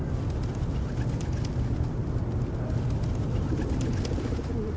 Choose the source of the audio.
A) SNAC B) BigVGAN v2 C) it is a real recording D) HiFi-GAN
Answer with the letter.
C